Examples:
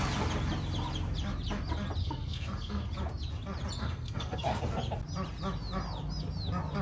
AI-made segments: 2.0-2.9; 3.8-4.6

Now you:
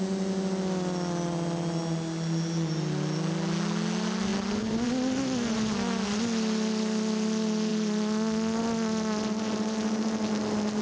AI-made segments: none